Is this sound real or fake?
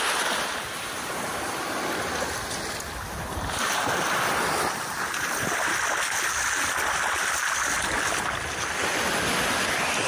real